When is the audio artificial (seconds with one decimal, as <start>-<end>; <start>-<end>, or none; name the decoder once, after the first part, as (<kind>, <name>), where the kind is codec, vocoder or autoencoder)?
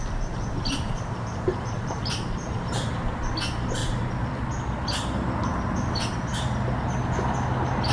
0.0-2.9 (vocoder, BigVGAN v2)